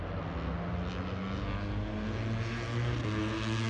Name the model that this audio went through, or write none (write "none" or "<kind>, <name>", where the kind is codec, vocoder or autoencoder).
none